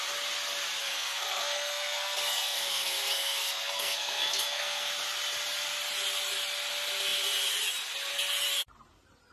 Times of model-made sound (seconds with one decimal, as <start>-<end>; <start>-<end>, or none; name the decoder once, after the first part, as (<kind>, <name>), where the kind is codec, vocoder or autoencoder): 0.8-4.9 (codec, SNAC)